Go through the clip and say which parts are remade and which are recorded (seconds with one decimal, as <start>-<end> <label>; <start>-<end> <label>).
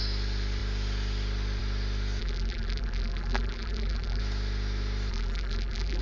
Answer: 0.0-2.2 recorded; 2.2-4.2 remade; 4.2-5.1 recorded; 5.1-6.0 remade